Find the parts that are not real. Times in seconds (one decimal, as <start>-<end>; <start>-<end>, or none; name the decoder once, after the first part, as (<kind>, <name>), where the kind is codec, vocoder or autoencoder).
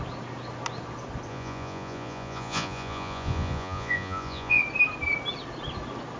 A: 1.3-4.6 (vocoder, Vocos)